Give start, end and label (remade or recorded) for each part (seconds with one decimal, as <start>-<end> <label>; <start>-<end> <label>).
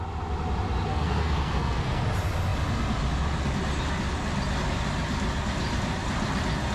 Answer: 0.0-0.9 recorded; 0.9-2.0 remade; 2.0-6.7 recorded